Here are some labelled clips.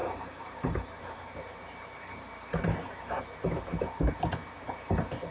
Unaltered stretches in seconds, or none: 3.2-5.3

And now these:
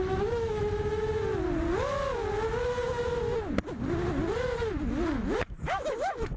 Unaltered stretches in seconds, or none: 1.3-5.1

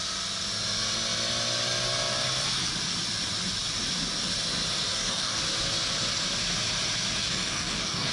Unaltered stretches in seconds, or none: 0.0-4.9; 5.4-7.2

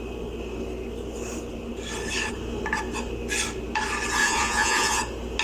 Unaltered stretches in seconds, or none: 0.0-4.2; 5.0-5.4

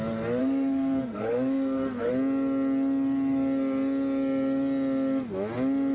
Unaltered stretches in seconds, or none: 0.0-0.4; 2.1-5.9

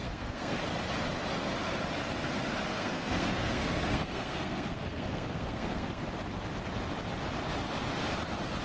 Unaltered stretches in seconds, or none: 0.6-2.7; 6.0-8.6

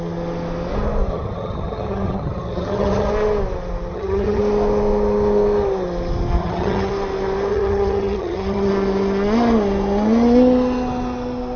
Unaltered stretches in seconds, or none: 0.0-1.1; 3.1-3.9; 4.4-6.4; 6.9-7.5; 8.7-11.6